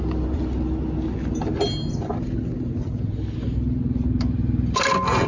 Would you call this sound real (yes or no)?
yes